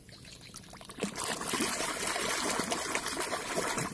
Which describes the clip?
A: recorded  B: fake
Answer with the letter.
A